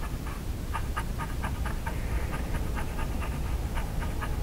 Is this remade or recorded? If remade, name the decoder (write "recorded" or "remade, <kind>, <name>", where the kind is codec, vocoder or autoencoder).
remade, vocoder, BigVGAN v2